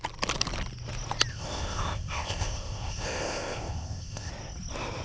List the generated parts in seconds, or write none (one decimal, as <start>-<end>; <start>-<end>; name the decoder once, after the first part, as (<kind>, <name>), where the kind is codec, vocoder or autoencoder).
1.3-4.3 (codec, ZipCodec)